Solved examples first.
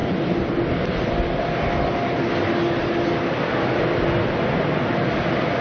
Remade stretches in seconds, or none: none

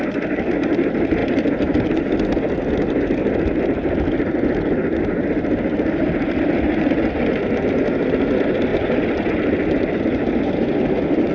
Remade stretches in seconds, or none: none

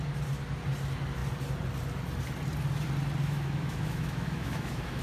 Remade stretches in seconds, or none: 3.2-5.0 (autoencoder, DAC-VAE)

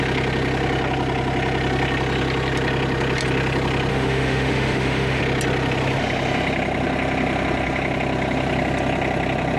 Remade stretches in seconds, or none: 3.9-5.2 (autoencoder, DAC-VAE)

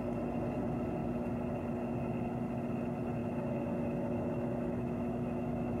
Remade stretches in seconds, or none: 3.2-5.8 (autoencoder, DAC-VAE)

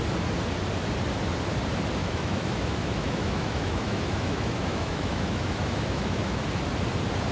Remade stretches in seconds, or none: 2.0-6.4 (autoencoder, DAC-VAE)

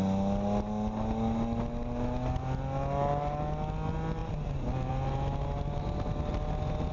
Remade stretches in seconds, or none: none

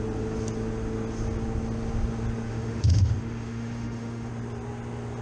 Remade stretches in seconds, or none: 2.5-4.3 (autoencoder, DAC-VAE)